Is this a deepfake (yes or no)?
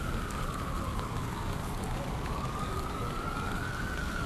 yes